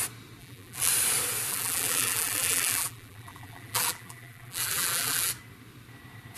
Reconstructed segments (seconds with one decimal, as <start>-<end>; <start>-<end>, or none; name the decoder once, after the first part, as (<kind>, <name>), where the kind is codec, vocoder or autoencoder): 0.4-0.9 (vocoder, BigVGAN v2); 1.5-5.3